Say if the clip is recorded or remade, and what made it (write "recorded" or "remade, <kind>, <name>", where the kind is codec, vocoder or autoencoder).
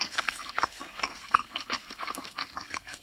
remade, codec, SNAC